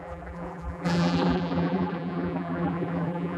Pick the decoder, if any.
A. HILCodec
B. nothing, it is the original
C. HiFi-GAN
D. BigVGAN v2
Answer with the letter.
D